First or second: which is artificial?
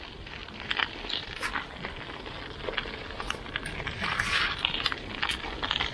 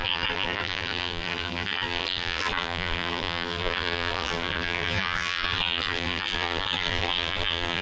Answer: second